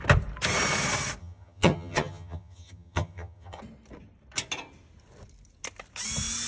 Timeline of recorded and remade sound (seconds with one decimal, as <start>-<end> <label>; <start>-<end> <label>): 0.0-1.2 recorded; 1.2-3.6 remade; 3.6-6.5 recorded